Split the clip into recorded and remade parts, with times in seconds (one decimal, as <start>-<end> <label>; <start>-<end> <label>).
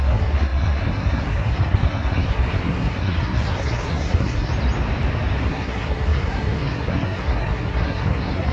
0.0-4.5 remade; 4.5-5.4 recorded; 5.4-8.5 remade